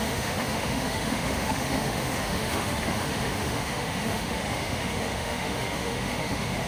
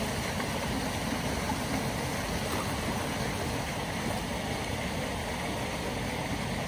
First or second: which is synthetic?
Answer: first